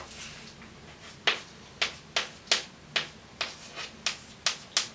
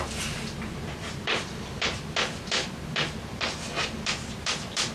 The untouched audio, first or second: first